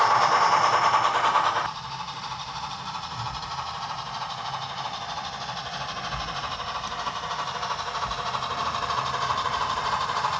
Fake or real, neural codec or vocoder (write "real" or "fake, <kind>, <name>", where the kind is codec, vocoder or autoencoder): real